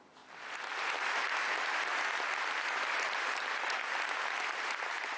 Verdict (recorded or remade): recorded